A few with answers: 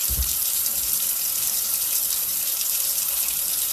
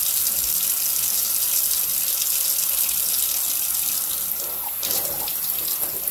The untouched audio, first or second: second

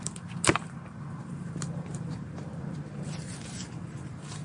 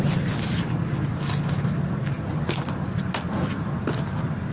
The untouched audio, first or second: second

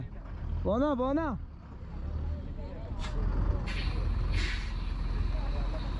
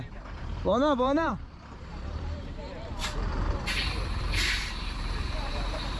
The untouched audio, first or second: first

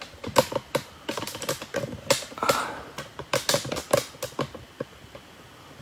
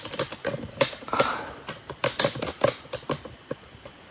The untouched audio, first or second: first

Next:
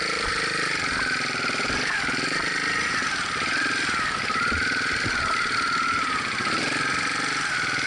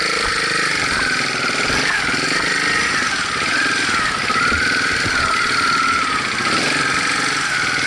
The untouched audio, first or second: second